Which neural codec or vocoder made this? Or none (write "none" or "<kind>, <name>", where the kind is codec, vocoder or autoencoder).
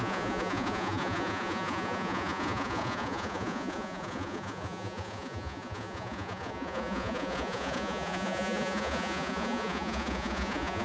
vocoder, Vocos